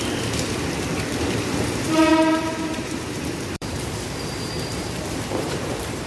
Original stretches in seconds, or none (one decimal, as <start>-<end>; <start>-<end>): 0.0-2.1